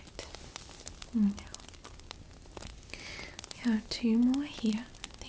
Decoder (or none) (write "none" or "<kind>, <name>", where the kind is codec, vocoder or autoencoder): none